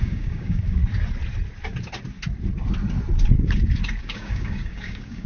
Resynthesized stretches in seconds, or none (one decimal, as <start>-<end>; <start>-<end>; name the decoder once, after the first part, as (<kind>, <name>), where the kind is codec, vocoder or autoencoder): 0.0-0.8 (codec, DAC); 4.0-5.3